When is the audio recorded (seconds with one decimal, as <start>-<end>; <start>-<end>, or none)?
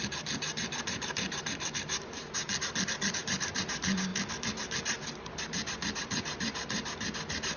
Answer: 2.5-3.2; 4.1-5.2